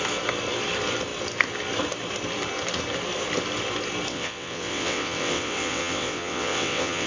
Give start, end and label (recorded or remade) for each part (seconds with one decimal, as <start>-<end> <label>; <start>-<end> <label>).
0.0-4.1 recorded; 4.1-7.1 remade